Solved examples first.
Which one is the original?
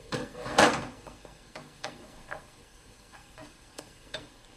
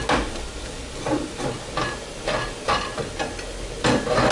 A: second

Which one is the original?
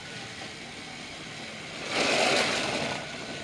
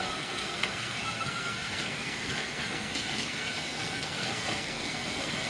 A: first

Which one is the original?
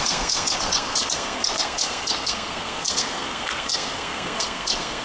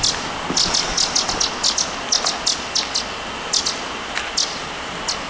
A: second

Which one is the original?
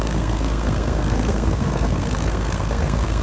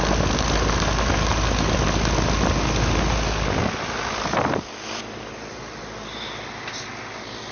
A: second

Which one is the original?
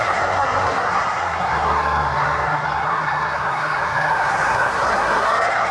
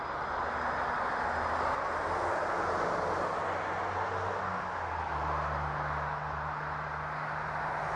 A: second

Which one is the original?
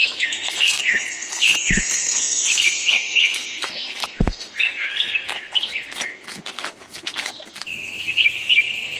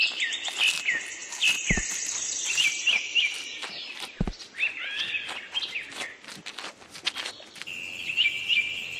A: second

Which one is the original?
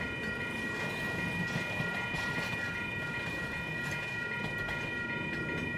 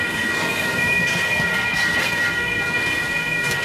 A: first